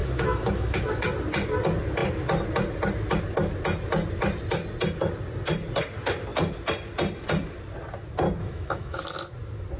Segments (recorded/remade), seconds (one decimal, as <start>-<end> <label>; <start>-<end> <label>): 0.0-1.0 remade; 1.0-8.4 recorded; 8.4-9.0 remade; 9.0-9.8 recorded